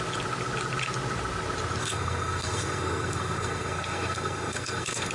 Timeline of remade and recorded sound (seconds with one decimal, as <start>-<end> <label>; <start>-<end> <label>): 0.0-1.8 recorded; 1.8-5.1 remade